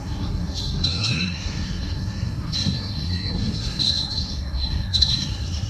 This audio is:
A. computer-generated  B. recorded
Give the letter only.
A